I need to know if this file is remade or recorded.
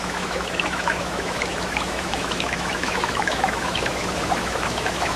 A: remade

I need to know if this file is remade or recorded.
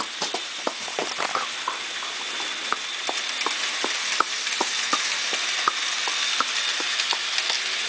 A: recorded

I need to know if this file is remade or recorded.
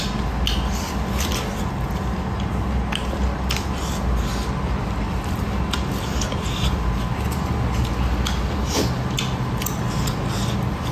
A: recorded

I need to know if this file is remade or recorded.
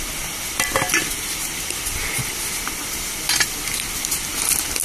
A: recorded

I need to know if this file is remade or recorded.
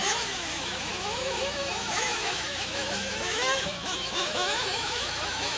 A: remade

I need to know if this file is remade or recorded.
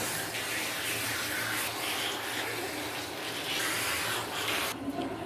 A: recorded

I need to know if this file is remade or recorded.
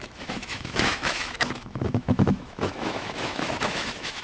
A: remade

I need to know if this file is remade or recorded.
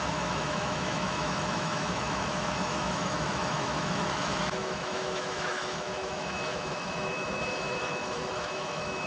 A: remade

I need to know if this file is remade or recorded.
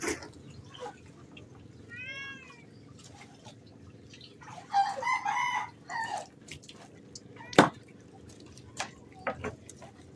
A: recorded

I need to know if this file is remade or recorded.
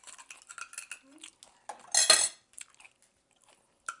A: recorded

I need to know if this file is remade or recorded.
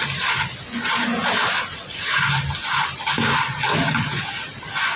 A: recorded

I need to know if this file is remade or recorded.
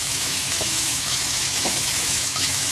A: remade